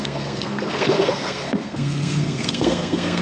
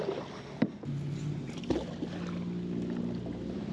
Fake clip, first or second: first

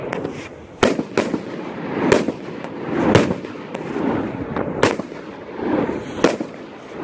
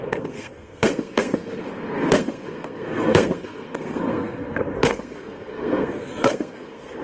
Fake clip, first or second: second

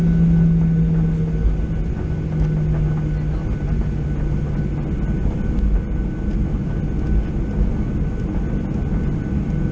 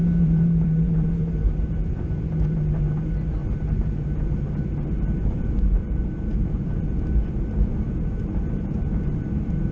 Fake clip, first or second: second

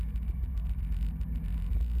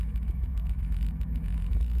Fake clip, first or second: second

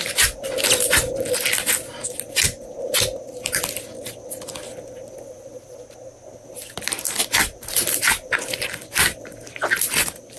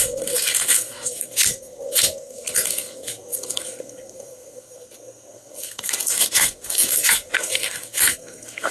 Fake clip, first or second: second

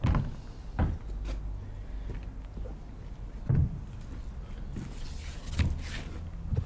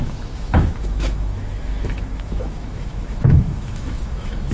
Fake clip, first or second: second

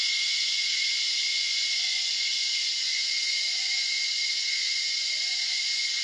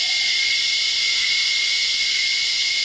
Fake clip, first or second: first